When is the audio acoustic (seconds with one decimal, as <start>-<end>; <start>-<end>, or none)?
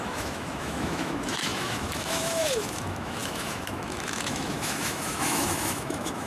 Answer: none